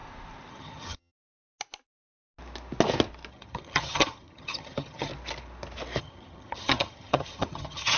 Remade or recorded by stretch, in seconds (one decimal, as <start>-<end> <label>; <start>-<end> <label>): 0.0-0.5 recorded; 0.5-1.1 remade; 1.1-3.3 recorded; 3.3-5.1 remade; 5.1-6.0 recorded; 6.0-8.0 remade